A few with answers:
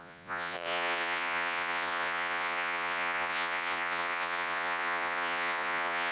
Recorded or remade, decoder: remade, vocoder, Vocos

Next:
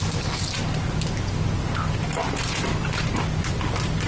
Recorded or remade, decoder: recorded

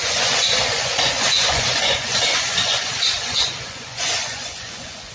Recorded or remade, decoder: remade, vocoder, Vocos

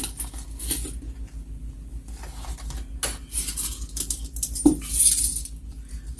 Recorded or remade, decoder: recorded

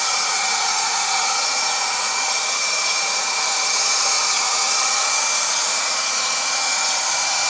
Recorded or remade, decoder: remade, vocoder, Vocos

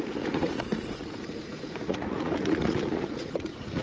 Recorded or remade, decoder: remade, vocoder, Vocos